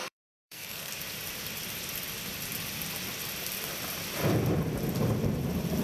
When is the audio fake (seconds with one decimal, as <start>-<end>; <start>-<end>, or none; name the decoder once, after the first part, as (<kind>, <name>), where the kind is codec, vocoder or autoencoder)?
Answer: 0.0-0.9 (codec, SNAC)